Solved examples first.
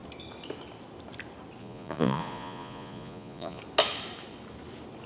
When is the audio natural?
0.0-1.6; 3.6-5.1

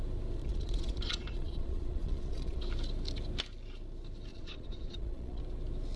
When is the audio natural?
0.0-0.4; 2.6-4.3; 5.4-6.0

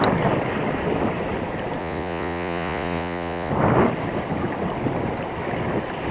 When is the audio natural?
0.0-1.8; 3.5-6.1